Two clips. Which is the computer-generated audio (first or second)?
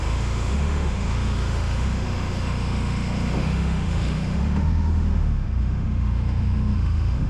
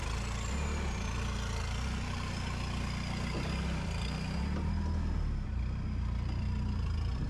first